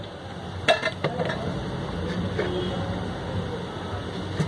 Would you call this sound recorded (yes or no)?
yes